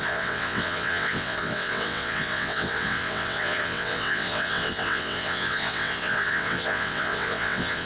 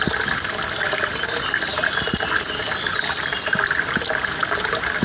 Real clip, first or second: second